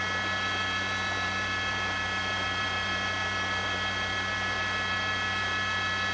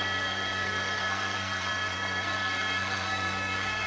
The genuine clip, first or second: first